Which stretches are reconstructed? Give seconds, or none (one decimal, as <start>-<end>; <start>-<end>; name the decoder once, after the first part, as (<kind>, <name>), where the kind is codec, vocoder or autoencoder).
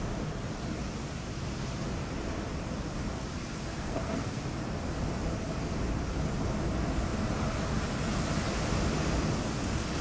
3.7-4.4 (codec, SNAC)